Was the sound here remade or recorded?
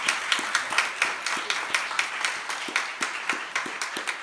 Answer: recorded